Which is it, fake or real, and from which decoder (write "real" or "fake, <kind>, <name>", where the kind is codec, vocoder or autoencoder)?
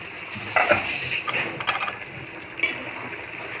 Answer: real